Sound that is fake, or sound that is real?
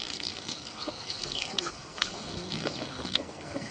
fake